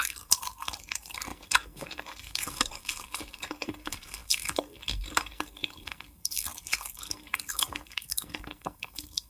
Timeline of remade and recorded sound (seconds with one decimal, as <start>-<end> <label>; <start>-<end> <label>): 0.0-9.3 remade